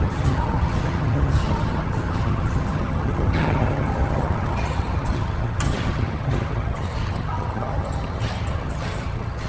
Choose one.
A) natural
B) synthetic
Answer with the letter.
B